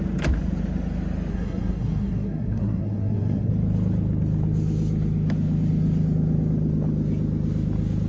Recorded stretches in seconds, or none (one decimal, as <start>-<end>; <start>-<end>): 0.0-1.3; 3.5-8.1